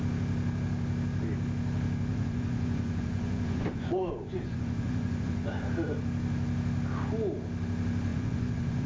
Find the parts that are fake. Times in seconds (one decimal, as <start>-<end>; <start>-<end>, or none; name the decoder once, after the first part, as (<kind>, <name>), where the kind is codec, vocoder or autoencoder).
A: 2.1-5.7 (vocoder, Vocos); 8.1-8.9